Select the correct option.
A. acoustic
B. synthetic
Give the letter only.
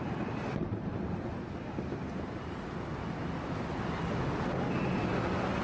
A